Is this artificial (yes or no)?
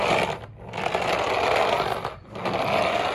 no